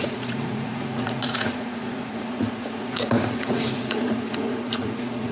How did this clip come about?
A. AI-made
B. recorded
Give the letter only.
A